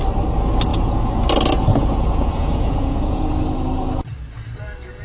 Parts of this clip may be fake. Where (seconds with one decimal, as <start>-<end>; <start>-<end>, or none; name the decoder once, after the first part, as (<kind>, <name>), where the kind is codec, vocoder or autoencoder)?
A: 0.7-1.2 (vocoder, Vocos); 1.7-3.3